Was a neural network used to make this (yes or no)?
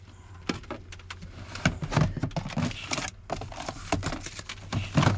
no